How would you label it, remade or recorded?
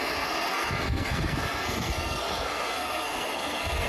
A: remade